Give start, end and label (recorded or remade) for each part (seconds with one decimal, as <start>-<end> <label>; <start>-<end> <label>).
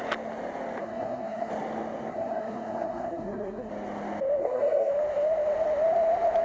0.0-0.8 recorded; 0.8-1.5 remade; 1.5-2.1 recorded; 2.1-3.7 remade; 3.7-4.4 recorded; 4.4-4.9 remade; 4.9-6.4 recorded